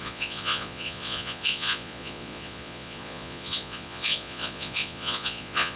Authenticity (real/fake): fake